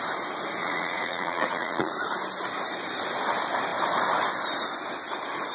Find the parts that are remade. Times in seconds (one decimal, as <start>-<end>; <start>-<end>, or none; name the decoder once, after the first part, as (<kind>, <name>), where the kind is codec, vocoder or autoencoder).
0.6-1.9 (vocoder, Vocos)